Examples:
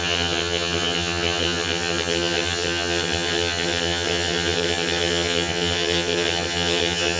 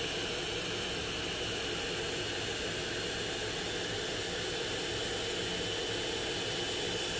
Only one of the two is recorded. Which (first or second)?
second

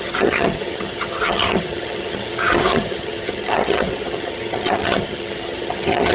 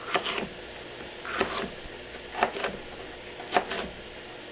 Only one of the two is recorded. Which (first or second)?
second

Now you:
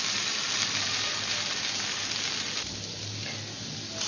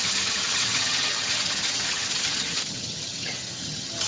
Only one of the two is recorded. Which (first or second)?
first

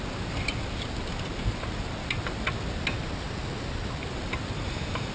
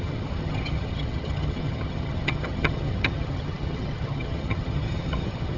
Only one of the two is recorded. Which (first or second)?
first